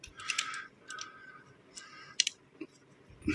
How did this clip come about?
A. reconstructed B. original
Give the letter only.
B